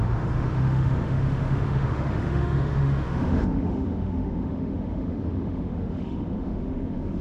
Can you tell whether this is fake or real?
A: fake